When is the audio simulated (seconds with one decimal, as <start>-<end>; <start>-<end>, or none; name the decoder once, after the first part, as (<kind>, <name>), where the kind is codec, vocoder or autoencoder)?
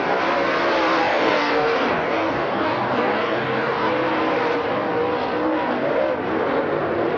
1.0-3.9 (codec, DAC)